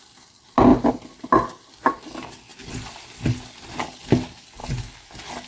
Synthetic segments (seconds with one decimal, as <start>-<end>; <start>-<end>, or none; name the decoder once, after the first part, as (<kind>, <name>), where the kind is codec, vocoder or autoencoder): none